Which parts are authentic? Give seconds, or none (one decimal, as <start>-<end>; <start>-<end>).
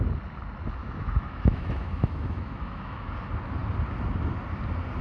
0.0-0.8; 3.1-5.0